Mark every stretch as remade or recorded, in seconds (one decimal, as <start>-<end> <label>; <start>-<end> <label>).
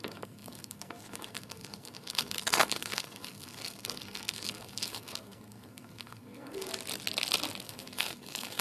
0.0-6.7 remade; 6.7-7.6 recorded; 7.6-8.6 remade